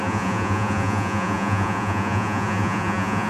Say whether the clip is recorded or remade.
remade